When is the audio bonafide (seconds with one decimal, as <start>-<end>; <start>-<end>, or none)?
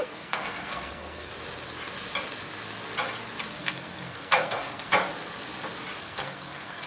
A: 1.3-3.6; 4.9-6.0